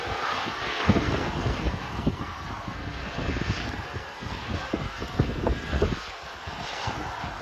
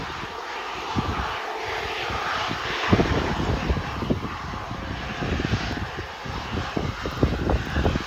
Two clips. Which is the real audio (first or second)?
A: second